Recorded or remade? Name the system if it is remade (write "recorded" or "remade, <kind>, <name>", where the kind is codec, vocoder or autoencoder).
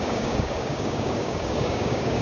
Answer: remade, codec, DAC